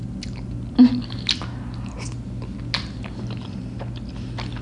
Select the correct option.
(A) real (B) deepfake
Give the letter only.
A